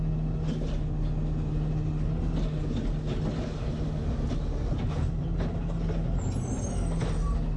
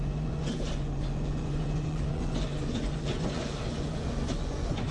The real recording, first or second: first